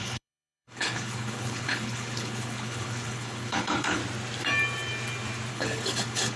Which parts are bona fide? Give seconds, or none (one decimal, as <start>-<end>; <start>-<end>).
4.0-5.5